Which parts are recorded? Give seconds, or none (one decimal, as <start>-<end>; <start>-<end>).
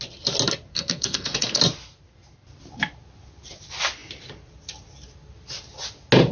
0.0-0.7; 1.6-6.3